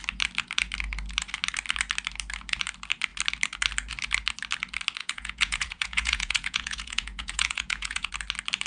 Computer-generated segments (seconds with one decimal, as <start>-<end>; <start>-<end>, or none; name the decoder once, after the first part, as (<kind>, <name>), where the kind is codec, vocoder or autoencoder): 5.0-8.1 (vocoder, Vocos)